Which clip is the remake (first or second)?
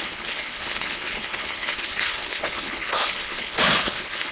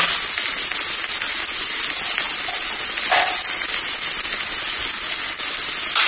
first